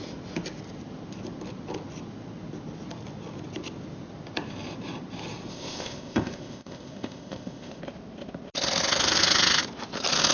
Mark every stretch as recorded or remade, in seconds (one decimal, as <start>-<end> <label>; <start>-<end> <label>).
0.0-5.5 recorded; 5.5-7.8 remade; 7.8-10.3 recorded